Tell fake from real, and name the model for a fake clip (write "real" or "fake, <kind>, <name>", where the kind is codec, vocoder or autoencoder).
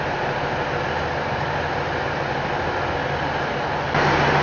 real